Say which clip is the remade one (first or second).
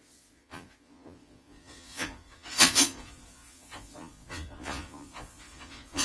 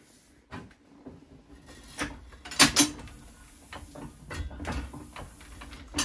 first